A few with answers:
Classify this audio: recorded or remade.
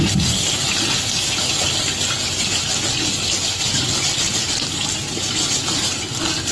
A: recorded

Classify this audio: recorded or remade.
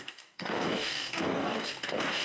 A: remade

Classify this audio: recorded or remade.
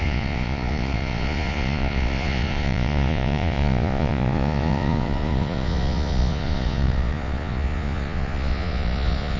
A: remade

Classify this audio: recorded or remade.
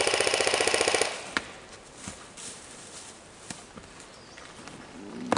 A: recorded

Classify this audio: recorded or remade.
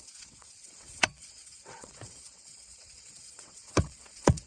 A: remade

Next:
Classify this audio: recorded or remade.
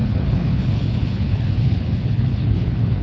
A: remade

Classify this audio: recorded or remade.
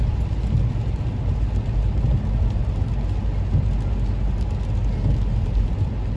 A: recorded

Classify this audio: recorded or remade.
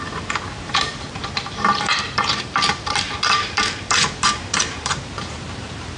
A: remade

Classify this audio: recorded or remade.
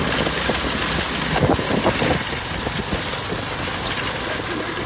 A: recorded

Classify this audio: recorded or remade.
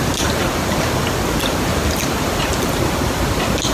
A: remade